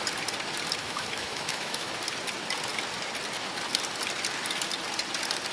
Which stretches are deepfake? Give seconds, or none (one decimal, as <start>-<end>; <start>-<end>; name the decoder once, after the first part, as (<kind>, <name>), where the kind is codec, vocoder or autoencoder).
0.8-1.9 (autoencoder, DAC-VAE)